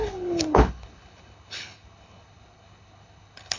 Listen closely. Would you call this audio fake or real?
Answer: fake